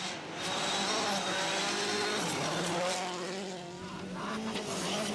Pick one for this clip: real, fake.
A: real